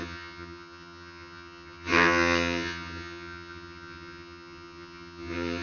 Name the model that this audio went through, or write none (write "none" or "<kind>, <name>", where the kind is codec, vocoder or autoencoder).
vocoder, HiFi-GAN